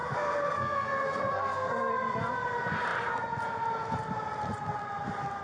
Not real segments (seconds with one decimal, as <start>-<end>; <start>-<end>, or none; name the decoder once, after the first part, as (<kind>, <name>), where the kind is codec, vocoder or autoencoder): 0.0-1.9 (codec, SNAC)